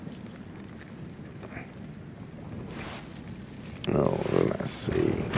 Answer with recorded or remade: recorded